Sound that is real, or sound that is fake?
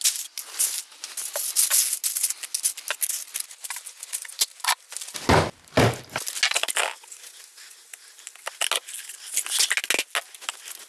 real